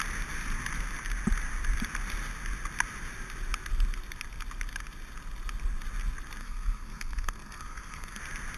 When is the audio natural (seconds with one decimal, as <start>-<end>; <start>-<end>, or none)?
0.0-6.4; 8.2-8.6